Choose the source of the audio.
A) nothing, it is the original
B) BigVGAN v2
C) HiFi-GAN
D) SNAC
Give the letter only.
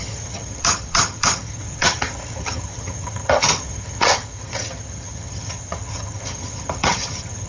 C